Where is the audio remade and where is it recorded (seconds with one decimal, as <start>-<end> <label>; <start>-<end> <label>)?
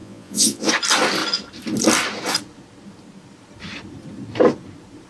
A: 0.0-0.7 remade; 0.7-5.1 recorded